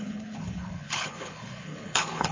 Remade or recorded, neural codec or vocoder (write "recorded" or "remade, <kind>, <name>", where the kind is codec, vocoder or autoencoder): remade, codec, HILCodec